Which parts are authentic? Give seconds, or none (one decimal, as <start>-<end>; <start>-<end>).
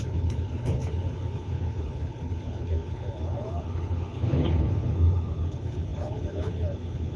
none